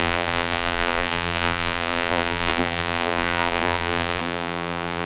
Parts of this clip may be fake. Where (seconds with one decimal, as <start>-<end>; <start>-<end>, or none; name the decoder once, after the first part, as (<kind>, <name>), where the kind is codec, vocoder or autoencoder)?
0.0-5.1 (vocoder, BigVGAN v2)